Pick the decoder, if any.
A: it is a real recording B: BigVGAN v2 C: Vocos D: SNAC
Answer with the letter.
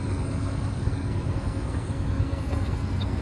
D